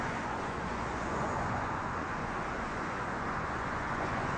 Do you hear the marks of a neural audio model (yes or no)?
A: yes